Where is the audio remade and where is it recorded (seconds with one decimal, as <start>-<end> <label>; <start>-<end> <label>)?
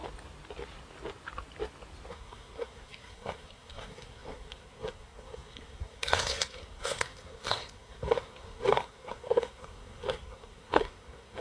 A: 0.0-2.1 recorded; 2.1-11.4 remade